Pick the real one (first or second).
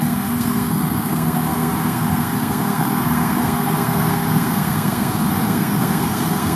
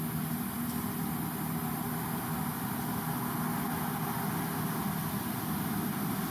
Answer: second